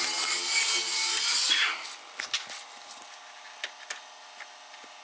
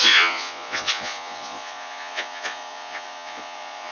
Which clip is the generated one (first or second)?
second